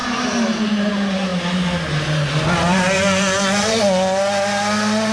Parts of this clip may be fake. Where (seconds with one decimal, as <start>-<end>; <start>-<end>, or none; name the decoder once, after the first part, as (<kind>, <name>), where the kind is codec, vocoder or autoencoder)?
0.0-0.9 (vocoder, BigVGAN v2); 2.7-3.8